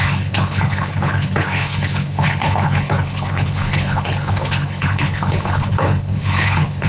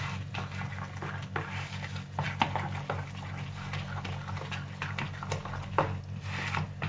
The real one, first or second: second